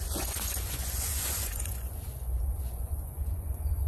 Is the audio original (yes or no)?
no